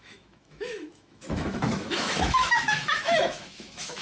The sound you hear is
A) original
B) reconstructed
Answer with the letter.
B